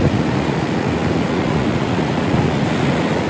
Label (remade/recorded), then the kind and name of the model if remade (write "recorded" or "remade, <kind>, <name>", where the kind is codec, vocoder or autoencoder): remade, vocoder, Vocos